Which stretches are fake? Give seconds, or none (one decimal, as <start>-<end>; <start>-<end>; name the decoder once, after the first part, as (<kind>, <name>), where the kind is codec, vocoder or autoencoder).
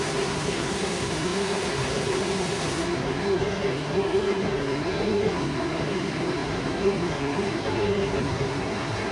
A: 0.0-9.1 (codec, SNAC)